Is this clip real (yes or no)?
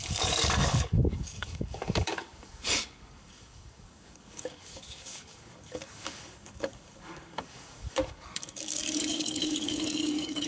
no